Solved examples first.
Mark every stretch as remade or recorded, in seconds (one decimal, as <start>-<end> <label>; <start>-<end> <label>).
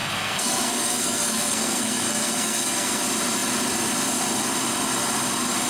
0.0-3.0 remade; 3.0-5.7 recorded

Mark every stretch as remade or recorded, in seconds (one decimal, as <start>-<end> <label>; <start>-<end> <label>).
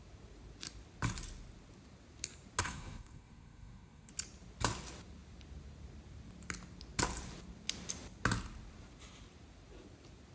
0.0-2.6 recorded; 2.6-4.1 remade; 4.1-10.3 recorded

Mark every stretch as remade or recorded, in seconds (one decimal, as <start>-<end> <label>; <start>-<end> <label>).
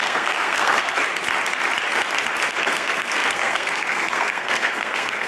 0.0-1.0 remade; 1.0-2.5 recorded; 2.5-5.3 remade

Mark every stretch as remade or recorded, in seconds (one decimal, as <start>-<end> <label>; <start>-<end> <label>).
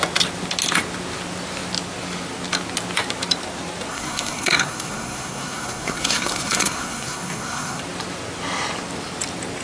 0.0-3.9 recorded; 3.9-7.8 remade; 7.8-9.6 recorded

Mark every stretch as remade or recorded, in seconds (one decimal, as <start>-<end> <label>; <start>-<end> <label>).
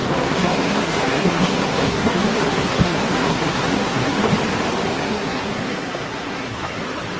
0.0-4.3 remade; 4.3-4.9 recorded; 4.9-6.8 remade; 6.8-7.2 recorded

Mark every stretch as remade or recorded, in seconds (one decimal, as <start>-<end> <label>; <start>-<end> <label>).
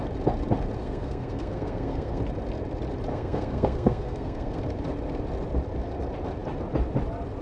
0.0-0.8 recorded; 0.8-2.2 remade; 2.2-3.1 recorded; 3.1-4.6 remade; 4.6-7.4 recorded